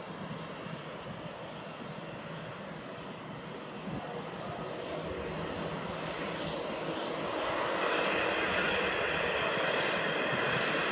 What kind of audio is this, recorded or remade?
recorded